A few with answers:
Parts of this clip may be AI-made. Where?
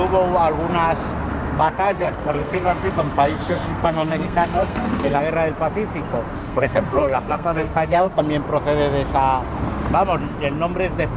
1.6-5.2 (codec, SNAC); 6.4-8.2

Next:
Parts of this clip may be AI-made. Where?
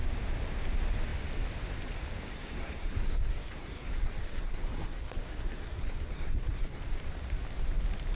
2.3-6.8 (codec, SNAC)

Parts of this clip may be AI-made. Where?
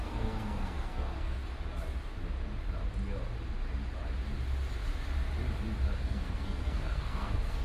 0.0-1.4 (codec, SNAC); 6.0-7.6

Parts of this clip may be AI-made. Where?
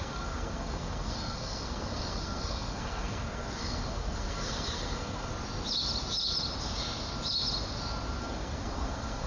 0.0-5.3 (codec, SNAC); 8.2-9.3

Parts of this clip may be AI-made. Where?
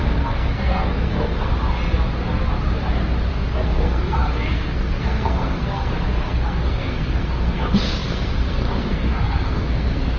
0.0-1.5 (codec, SNAC); 3.3-10.2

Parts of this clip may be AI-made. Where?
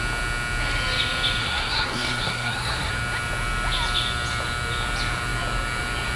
1.4-2.9 (codec, SNAC)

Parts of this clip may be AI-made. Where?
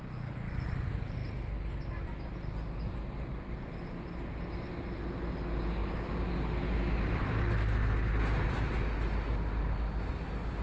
none